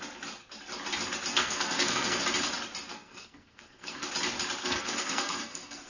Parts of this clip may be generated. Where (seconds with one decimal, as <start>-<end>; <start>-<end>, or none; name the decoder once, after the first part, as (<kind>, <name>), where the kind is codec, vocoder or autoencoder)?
1.3-2.2 (codec, SNAC); 2.9-4.1; 4.6-5.9

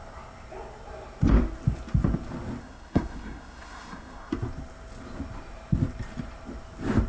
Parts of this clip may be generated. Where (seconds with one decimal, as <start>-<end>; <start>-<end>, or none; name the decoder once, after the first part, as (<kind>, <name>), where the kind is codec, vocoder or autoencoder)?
2.6-4.3 (codec, SNAC)